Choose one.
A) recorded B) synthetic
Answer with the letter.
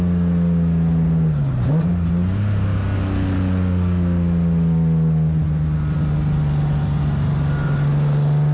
A